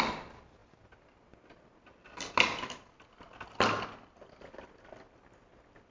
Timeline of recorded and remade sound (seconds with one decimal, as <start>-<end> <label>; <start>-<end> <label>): 0.0-5.9 recorded